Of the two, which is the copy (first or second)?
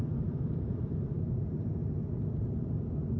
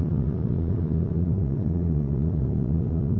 second